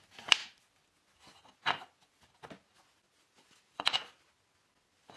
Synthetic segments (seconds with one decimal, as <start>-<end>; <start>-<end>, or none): none